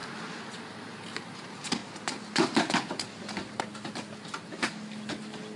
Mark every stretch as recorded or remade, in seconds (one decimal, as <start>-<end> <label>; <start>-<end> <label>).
0.0-5.6 recorded